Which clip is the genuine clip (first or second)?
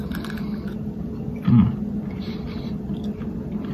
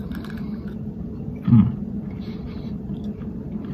first